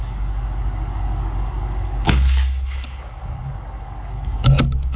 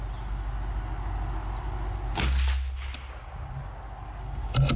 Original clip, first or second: second